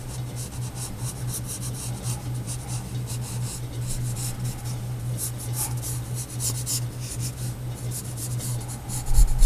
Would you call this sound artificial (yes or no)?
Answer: no